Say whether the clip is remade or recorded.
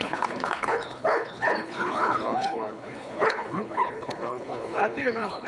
remade